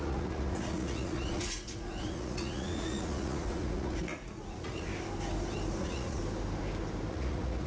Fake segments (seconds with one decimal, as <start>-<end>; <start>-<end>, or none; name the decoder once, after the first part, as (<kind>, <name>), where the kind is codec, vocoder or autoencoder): 0.0-4.9 (vocoder, Vocos); 5.8-6.2; 7.1-7.7